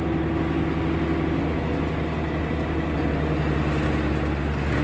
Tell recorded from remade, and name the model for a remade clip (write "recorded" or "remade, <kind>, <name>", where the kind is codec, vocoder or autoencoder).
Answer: recorded